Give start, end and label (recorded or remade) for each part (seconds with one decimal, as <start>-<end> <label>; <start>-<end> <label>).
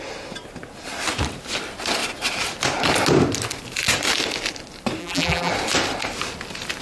0.0-5.0 recorded; 5.0-5.5 remade; 5.5-6.8 recorded